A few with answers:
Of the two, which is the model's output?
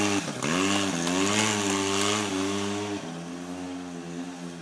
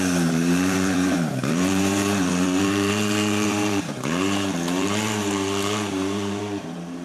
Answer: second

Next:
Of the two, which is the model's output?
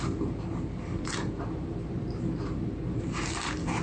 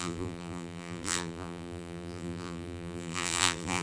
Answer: second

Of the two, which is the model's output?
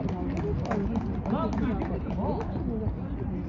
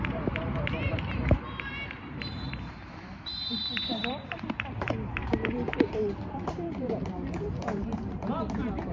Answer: second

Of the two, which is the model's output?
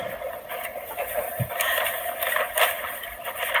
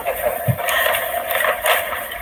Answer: first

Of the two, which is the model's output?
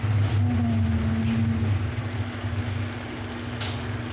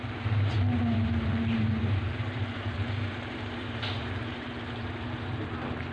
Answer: second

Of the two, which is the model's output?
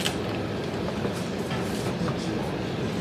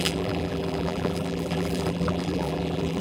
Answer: second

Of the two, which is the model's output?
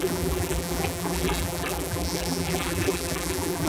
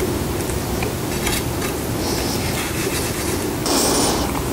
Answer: first